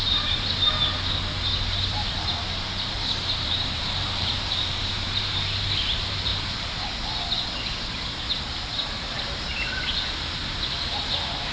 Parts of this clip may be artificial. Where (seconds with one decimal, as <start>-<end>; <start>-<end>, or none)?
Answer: 0.0-0.8; 1.7-6.3; 7.8-9.1; 11.0-11.5